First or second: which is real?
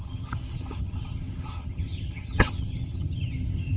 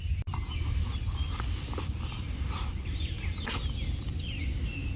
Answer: second